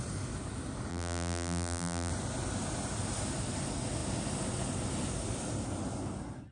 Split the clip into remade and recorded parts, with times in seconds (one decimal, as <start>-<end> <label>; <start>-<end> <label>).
0.0-0.9 recorded; 0.9-2.1 remade; 2.1-6.5 recorded